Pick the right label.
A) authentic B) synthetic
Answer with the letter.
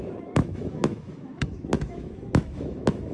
B